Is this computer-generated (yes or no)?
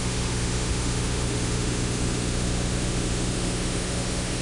yes